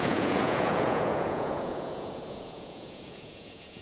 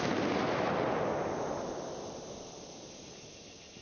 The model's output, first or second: first